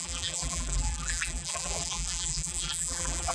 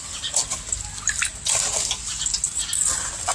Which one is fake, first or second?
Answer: first